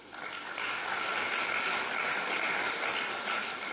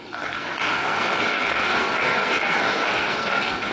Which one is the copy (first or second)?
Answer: second